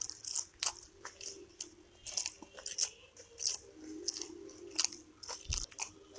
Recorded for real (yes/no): yes